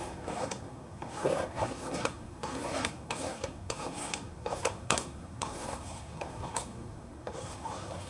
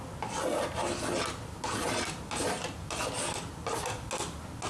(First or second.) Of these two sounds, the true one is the second